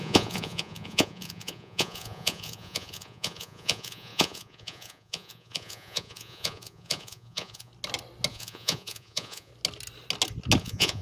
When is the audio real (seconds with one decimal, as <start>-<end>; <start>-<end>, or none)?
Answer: 7.7-8.3; 9.5-10.6